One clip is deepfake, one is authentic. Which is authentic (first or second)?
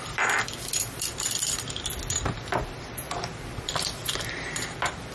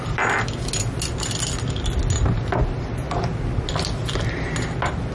second